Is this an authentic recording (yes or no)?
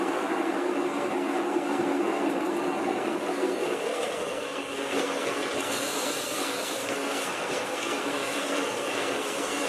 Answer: no